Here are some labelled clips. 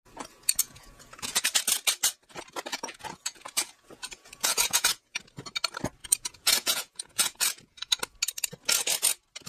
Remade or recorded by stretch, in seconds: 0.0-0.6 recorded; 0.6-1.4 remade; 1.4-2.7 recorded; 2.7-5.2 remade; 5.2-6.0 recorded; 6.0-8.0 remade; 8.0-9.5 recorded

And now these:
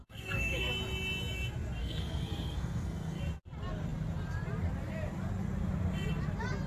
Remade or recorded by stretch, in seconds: 0.0-0.7 remade; 0.7-1.8 recorded; 1.8-3.2 remade; 3.2-6.7 recorded

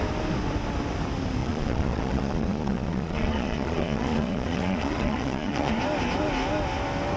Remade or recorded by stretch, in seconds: 0.0-1.4 recorded; 1.4-5.7 remade; 5.7-7.2 recorded

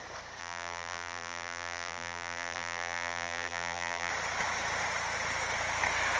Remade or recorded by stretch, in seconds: 0.0-0.4 recorded; 0.4-4.1 remade; 4.1-6.2 recorded

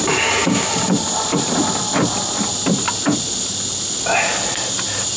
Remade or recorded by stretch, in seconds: 0.0-5.2 recorded

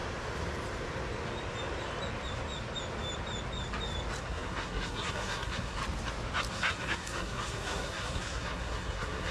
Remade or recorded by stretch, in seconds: 0.0-4.2 recorded; 4.2-5.8 remade; 5.8-6.5 recorded; 6.5-9.3 remade

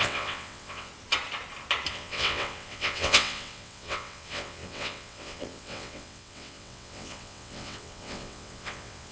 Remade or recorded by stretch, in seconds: 0.0-0.9 remade; 0.9-1.9 recorded; 1.9-9.1 remade

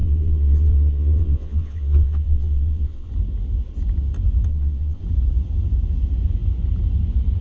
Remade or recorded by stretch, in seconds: 0.0-3.1 remade; 3.1-4.5 recorded; 4.5-5.0 remade; 5.0-7.4 recorded